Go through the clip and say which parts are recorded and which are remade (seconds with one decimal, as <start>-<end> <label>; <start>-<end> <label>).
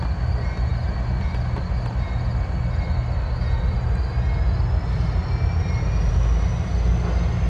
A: 0.0-7.5 recorded